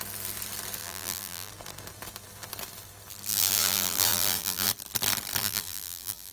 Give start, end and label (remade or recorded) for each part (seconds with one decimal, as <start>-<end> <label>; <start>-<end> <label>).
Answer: 0.0-0.8 recorded; 0.8-1.5 remade; 1.5-3.3 recorded; 3.3-4.7 remade; 4.7-5.4 recorded; 5.4-6.3 remade